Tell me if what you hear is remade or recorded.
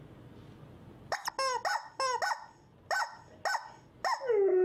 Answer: recorded